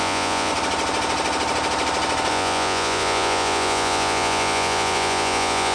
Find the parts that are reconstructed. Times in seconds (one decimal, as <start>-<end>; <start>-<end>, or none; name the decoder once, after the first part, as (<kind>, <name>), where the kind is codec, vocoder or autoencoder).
0.0-0.5 (vocoder, Vocos); 2.3-5.7